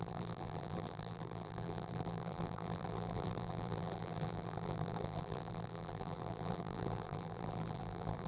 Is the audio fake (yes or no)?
yes